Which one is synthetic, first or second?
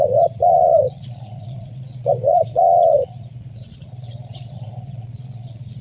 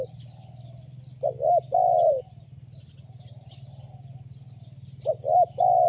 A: first